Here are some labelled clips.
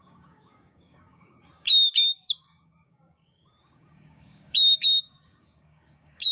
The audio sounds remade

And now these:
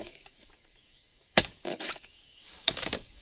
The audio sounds remade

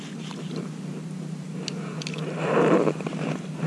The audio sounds recorded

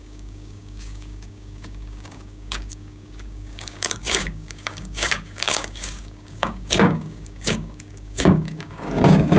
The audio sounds remade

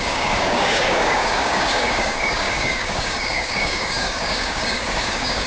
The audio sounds remade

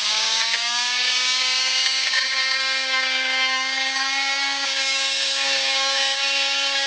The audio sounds remade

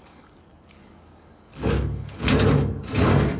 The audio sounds remade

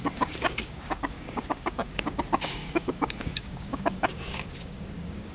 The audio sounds remade